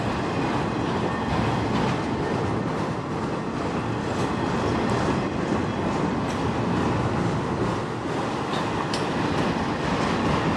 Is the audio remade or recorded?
recorded